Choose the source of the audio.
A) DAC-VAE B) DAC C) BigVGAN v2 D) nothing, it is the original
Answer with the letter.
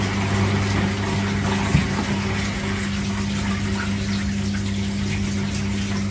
D